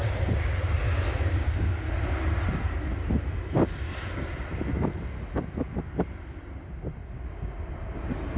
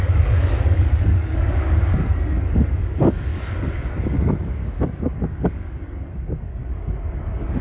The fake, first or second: second